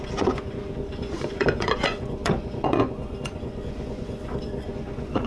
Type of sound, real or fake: fake